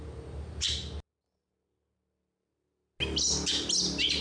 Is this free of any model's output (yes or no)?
yes